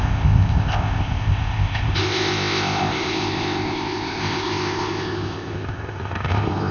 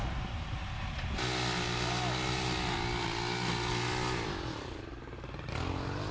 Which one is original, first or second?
second